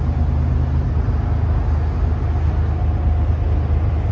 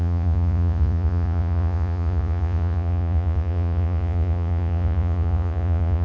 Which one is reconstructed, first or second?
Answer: second